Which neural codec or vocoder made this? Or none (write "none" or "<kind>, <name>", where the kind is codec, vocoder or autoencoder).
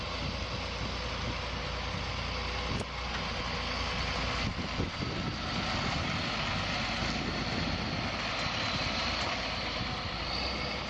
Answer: none